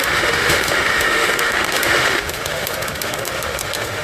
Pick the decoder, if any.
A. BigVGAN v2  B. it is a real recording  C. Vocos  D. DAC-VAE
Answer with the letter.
D